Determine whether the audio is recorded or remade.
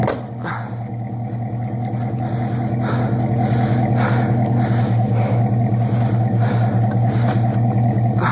recorded